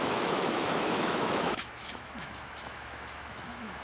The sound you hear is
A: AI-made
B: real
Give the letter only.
A